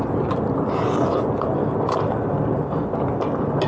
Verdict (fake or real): real